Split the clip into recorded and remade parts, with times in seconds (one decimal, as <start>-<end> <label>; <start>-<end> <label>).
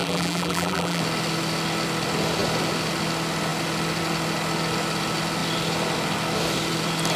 0.0-1.0 remade; 1.0-7.2 recorded